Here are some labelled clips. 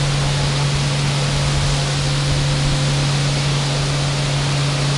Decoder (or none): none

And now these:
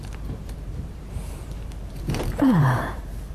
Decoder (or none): vocoder, BigVGAN v2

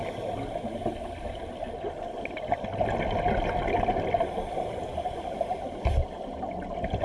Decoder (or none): none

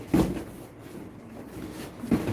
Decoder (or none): none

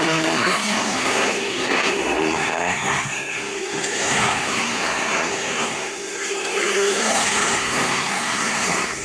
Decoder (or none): codec, SNAC